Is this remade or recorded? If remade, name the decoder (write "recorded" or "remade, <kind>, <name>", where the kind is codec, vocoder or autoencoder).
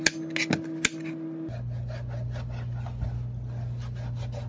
recorded